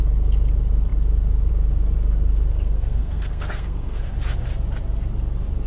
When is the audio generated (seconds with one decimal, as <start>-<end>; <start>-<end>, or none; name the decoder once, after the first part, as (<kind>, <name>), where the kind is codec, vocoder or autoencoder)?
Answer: 2.5-4.0 (codec, SNAC)